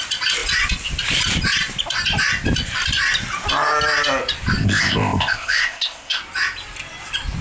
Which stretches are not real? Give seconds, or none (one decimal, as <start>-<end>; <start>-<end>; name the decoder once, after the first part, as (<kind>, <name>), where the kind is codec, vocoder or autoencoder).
4.6-6.2 (codec, ZipCodec)